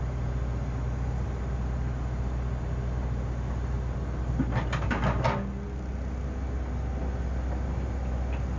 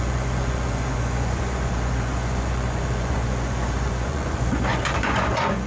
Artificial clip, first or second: second